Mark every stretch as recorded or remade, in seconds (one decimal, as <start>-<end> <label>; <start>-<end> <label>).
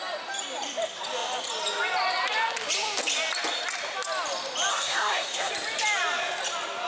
0.0-4.7 recorded; 4.7-5.5 remade; 5.5-6.9 recorded